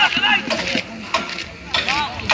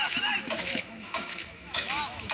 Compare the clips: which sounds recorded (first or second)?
first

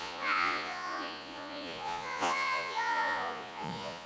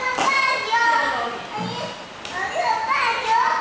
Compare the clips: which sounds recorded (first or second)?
second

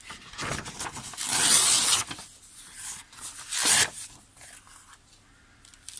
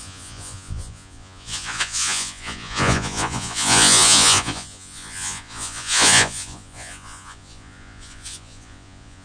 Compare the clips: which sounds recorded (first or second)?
first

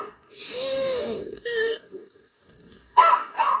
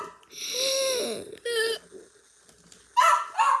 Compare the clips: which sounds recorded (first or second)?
second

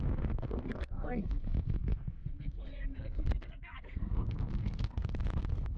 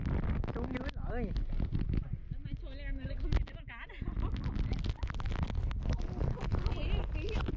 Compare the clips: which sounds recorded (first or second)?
second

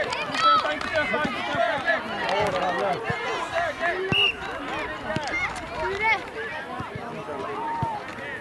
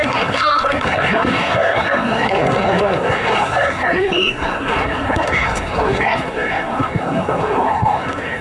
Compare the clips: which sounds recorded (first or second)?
first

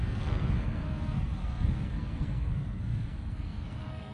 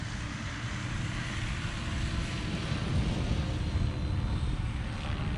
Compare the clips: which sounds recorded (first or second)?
second